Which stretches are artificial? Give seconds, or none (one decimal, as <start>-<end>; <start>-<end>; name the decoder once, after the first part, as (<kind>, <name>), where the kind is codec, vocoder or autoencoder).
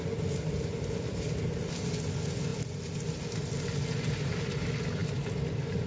none